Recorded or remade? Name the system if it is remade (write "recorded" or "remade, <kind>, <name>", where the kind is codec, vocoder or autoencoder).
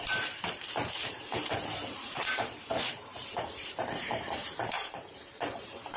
remade, vocoder, BigVGAN v2